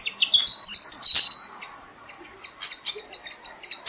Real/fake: real